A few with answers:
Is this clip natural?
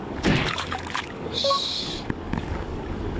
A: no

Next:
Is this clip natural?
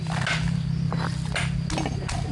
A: yes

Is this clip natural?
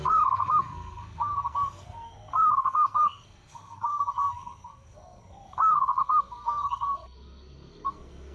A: no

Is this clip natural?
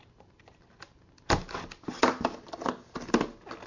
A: yes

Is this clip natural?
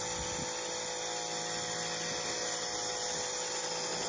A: yes